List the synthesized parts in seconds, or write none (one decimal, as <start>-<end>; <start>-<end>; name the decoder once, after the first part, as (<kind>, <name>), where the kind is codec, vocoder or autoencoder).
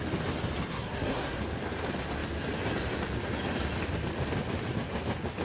0.7-1.4 (codec, SNAC)